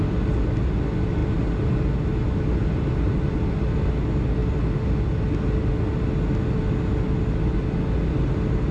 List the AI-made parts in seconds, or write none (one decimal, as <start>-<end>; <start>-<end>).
none